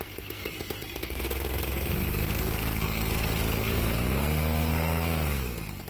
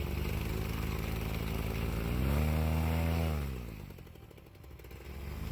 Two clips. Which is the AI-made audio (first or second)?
first